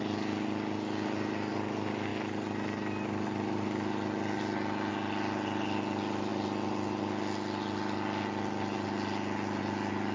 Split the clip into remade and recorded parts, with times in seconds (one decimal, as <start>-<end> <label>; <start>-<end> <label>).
0.0-10.1 recorded